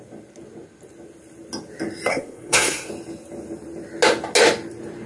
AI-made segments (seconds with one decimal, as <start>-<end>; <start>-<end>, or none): 2.1-2.9